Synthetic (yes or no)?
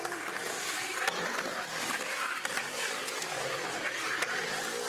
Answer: no